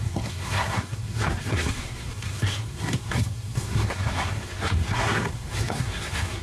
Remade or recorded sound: remade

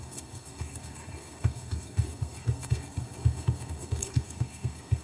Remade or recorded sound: remade